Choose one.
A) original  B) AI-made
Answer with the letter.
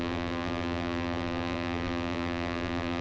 B